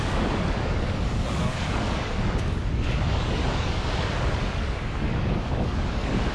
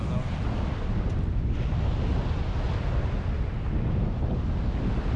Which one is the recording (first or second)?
second